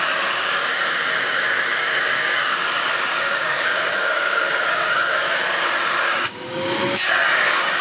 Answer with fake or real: fake